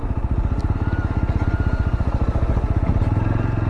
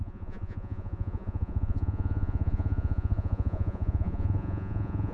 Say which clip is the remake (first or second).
second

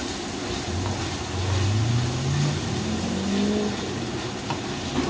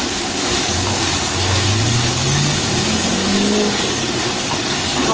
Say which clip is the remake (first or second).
second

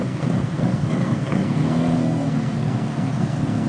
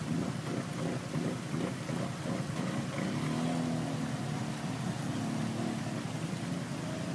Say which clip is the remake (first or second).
first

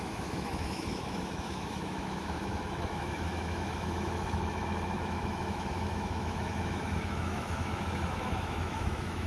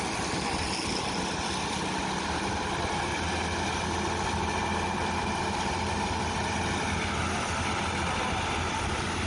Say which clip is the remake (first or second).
first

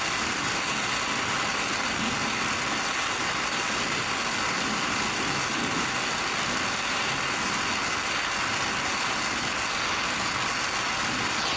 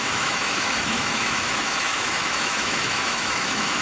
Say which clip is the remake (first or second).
second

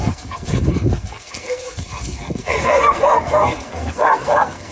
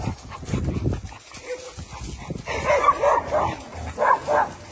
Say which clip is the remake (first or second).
first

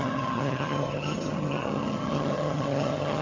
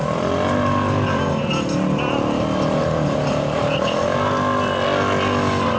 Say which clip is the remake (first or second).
first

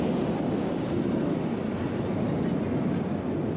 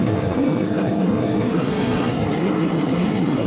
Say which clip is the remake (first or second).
second